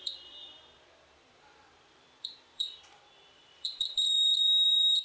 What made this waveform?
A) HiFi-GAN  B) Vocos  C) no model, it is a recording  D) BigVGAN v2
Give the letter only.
D